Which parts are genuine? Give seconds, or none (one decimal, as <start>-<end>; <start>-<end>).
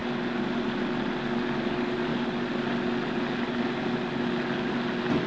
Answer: 0.0-1.7; 2.1-5.3